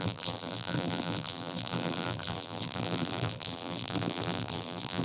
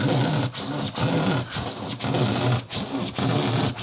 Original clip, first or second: second